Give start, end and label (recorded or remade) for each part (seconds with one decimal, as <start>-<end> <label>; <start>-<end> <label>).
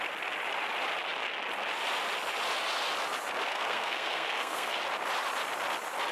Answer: 0.0-3.5 recorded; 3.5-4.8 remade; 4.8-6.1 recorded